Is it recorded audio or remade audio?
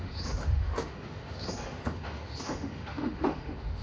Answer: remade